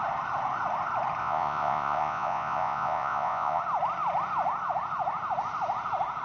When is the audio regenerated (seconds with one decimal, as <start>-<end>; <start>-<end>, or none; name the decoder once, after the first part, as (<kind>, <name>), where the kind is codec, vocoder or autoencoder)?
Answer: 1.2-3.6 (vocoder, Vocos)